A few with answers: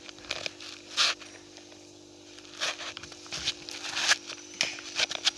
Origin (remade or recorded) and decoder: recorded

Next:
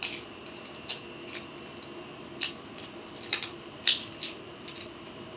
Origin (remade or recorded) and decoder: recorded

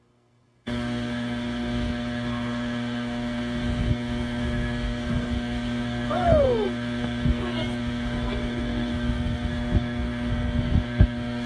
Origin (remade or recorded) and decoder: remade, codec, SNAC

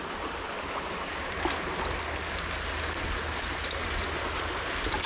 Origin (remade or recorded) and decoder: recorded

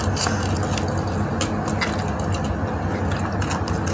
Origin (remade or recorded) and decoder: recorded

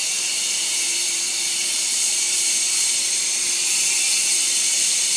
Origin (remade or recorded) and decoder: remade, vocoder, BigVGAN v2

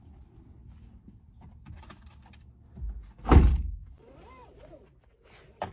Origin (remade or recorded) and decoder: recorded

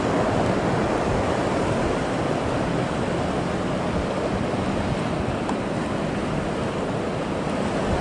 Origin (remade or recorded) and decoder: recorded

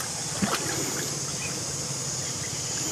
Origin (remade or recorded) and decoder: recorded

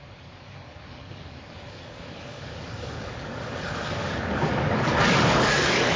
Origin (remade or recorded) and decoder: remade, codec, DAC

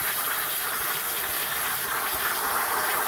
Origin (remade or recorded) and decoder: remade, vocoder, BigVGAN v2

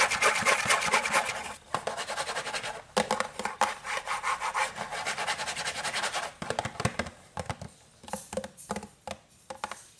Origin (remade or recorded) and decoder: recorded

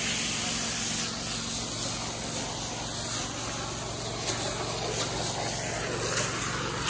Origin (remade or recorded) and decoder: recorded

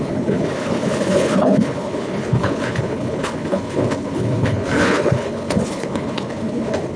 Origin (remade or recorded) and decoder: remade, codec, HILCodec